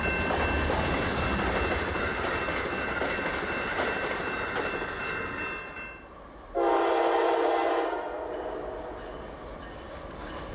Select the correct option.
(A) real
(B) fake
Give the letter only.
A